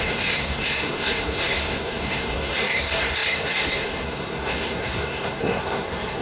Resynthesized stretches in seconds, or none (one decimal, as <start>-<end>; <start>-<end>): 0.0-6.2